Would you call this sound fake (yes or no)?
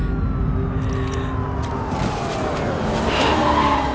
no